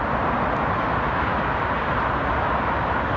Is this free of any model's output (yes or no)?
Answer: yes